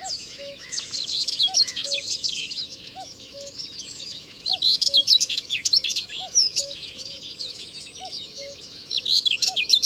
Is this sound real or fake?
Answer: fake